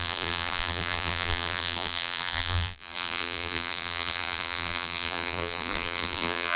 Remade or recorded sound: remade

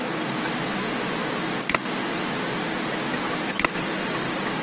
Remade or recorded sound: recorded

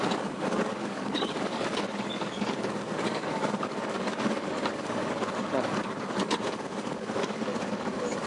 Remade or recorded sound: remade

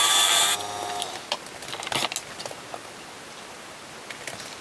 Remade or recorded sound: recorded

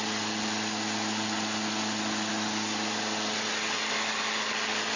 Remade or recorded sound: recorded